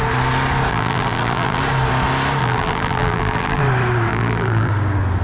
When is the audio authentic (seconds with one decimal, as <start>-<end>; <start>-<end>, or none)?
0.0-0.7; 1.6-2.4; 3.6-4.1; 4.7-5.2